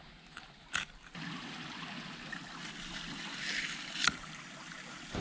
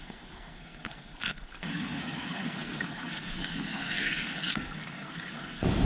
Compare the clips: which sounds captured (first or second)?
first